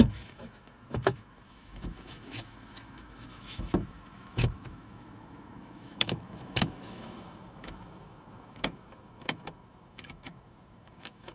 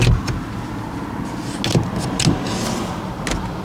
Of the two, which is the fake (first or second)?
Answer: first